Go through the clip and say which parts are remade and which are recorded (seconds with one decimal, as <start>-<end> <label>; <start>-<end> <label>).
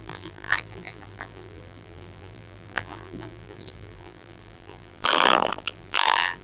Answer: 0.0-6.4 remade